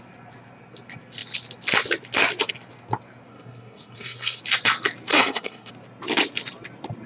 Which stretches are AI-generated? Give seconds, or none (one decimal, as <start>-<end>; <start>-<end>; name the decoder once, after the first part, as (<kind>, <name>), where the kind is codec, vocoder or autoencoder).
3.3-4.4 (codec, SNAC); 5.1-5.7